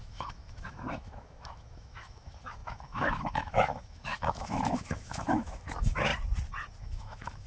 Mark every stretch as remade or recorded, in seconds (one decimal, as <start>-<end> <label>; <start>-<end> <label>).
0.0-6.1 remade; 6.1-6.8 recorded; 6.8-7.5 remade